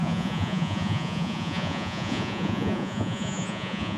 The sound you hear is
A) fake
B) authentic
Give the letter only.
A